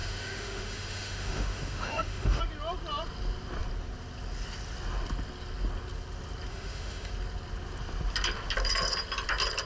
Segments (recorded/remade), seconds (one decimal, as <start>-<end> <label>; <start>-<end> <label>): 0.0-2.4 remade; 2.4-6.5 recorded; 6.5-7.1 remade; 7.1-9.7 recorded